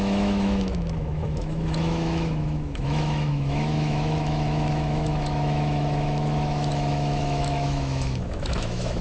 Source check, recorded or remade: remade